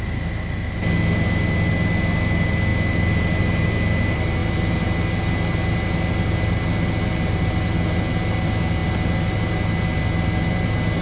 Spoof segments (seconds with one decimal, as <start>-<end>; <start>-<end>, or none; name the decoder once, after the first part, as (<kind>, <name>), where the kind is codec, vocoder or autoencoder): none